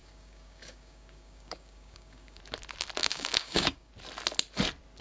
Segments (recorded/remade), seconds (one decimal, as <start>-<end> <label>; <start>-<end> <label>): 0.0-2.4 remade; 2.4-3.0 recorded; 3.0-3.9 remade; 3.9-5.0 recorded